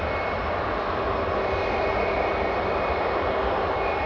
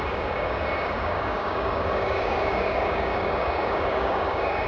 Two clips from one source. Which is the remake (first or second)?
second